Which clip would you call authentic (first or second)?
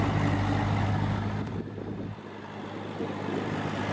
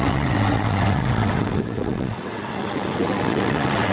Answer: first